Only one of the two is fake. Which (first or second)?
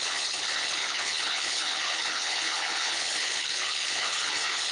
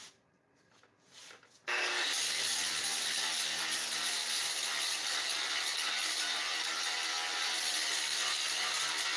first